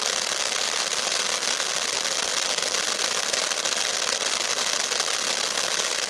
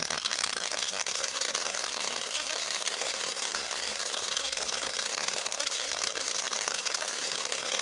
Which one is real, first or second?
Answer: first